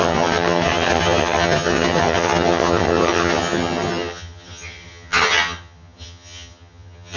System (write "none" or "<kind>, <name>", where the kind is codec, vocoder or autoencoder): vocoder, HiFi-GAN